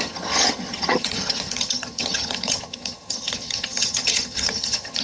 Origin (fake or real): fake